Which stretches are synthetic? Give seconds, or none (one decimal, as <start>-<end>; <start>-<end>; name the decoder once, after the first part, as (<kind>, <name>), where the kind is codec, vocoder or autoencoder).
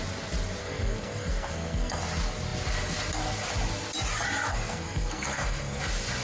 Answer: 0.6-2.0 (codec, SNAC); 4.5-5.8